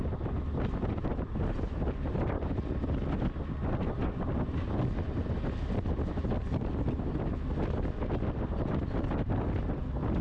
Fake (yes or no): no